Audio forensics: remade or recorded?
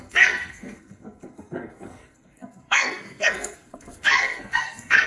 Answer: remade